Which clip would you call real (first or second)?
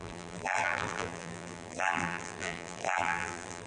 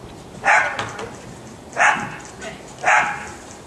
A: second